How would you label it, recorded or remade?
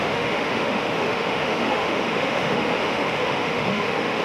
remade